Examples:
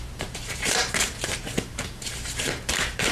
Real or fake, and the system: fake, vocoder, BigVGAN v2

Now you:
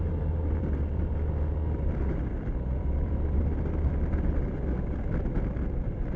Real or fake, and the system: fake, vocoder, BigVGAN v2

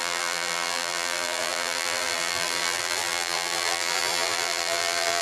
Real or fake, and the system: fake, vocoder, BigVGAN v2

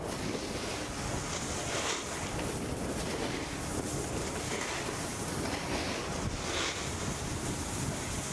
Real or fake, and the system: real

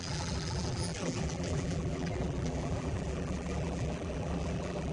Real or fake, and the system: fake, vocoder, BigVGAN v2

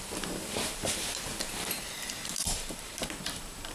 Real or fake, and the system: fake, vocoder, BigVGAN v2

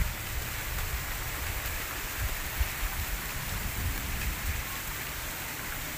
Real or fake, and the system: fake, vocoder, BigVGAN v2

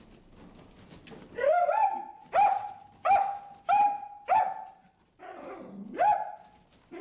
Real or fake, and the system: real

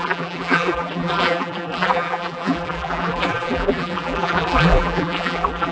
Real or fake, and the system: fake, vocoder, BigVGAN v2